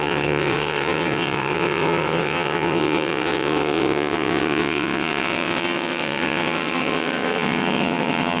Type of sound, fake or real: fake